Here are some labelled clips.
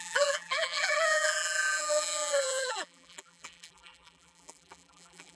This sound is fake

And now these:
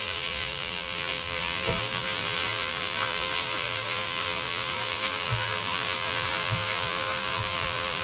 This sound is fake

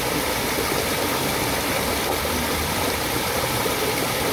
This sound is fake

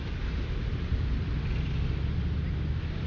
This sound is real